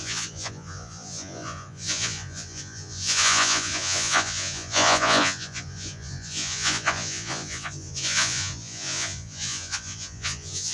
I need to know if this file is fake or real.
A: fake